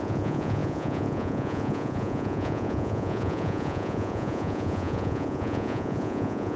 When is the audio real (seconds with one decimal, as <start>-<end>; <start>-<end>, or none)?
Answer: none